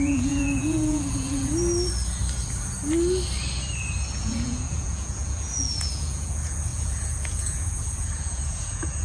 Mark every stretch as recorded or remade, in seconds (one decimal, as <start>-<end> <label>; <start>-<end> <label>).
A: 0.0-1.5 remade; 1.5-4.2 recorded; 4.2-9.0 remade